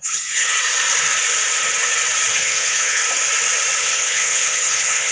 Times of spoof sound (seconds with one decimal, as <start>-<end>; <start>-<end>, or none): 0.0-0.5; 2.3-3.0; 3.8-5.1

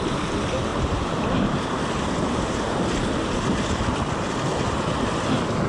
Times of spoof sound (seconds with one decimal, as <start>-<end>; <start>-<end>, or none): 0.7-4.1

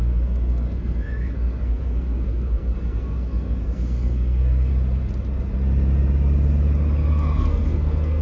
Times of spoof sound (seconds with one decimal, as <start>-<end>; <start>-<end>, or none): 0.0-4.7; 7.1-8.2

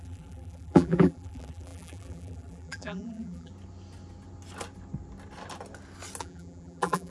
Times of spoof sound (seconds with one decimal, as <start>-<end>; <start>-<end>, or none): 0.0-3.5; 6.2-7.1

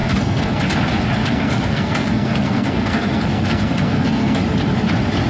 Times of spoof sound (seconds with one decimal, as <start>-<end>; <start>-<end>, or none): 0.0-0.6; 1.2-4.4